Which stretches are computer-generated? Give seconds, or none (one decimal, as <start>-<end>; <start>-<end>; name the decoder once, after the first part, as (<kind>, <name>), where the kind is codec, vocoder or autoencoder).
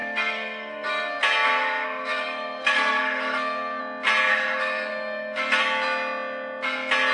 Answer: 0.0-1.2 (codec, SNAC); 1.6-3.8; 4.3-5.6